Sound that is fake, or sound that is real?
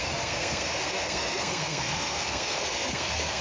fake